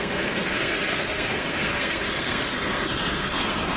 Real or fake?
fake